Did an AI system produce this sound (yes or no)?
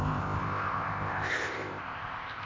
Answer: yes